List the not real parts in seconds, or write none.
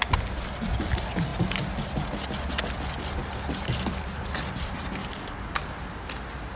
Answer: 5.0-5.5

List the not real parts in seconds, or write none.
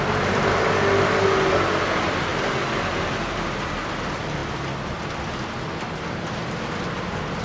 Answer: none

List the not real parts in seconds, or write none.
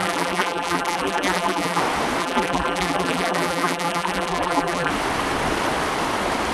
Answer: 0.0-1.8; 2.2-4.9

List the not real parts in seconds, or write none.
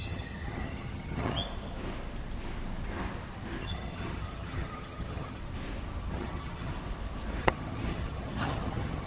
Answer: 0.0-1.4; 3.6-5.4; 6.1-6.7; 7.4-9.1